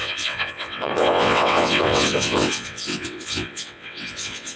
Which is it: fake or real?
fake